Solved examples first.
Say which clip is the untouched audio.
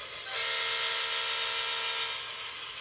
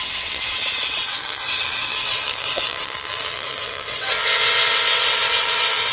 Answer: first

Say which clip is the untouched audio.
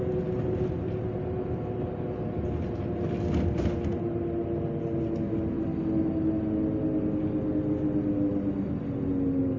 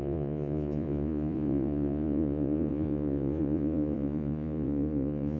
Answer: first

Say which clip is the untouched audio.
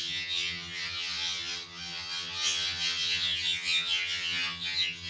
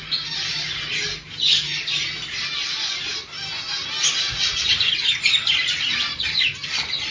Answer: second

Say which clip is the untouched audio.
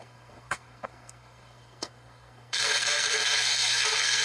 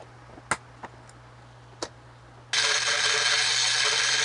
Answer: second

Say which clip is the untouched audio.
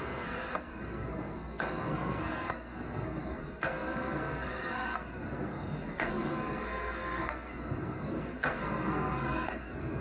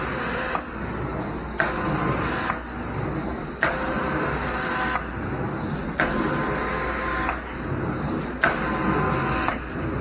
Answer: second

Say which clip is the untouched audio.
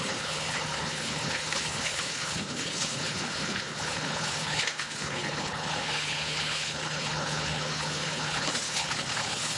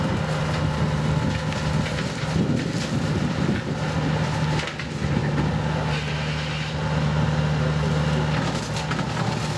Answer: second